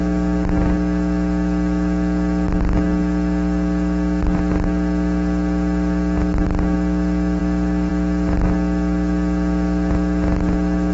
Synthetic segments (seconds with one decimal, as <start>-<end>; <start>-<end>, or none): none